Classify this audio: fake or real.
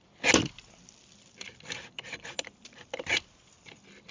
real